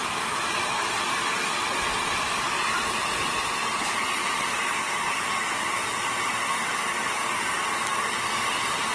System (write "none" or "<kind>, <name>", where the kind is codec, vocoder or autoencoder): vocoder, BigVGAN v2